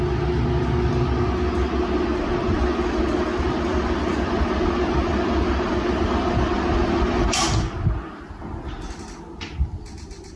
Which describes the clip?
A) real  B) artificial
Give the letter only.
A